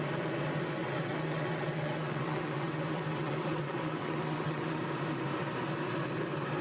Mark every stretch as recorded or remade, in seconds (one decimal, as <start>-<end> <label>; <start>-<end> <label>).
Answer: 0.0-0.8 recorded; 0.8-4.8 remade; 4.8-6.6 recorded

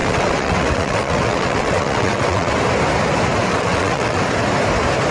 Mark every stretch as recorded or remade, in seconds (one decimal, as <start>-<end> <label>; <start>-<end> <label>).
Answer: 0.0-2.5 remade; 2.5-3.5 recorded; 3.5-4.2 remade; 4.2-5.1 recorded

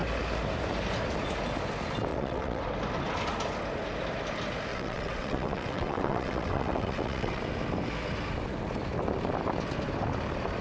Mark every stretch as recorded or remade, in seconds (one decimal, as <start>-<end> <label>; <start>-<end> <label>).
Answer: 0.0-2.1 recorded; 2.1-2.6 remade; 2.6-4.7 recorded; 4.7-7.4 remade; 7.4-10.6 recorded

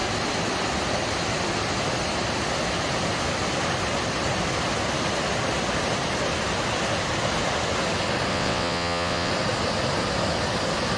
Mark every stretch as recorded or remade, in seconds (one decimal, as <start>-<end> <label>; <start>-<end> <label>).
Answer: 0.0-8.3 recorded; 8.3-9.3 remade; 9.3-11.0 recorded

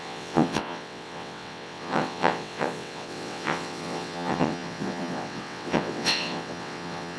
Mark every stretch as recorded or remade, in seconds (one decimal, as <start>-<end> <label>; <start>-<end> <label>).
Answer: 0.0-7.2 remade

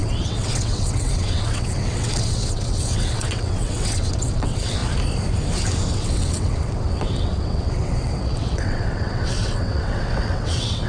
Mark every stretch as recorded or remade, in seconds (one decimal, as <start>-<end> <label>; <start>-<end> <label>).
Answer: 0.0-4.8 remade; 4.8-5.9 recorded; 5.9-10.9 remade

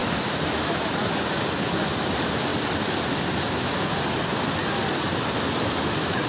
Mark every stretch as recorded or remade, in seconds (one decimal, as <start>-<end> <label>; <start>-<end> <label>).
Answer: 0.0-6.3 recorded

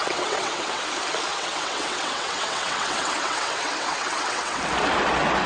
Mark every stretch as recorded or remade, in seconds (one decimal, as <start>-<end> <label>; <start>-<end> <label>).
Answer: 0.0-0.8 remade; 0.8-1.3 recorded; 1.3-4.6 remade; 4.6-5.5 recorded